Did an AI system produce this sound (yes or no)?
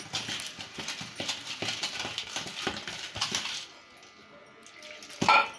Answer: no